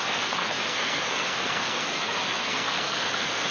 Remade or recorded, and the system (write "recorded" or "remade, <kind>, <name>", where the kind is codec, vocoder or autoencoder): remade, codec, SNAC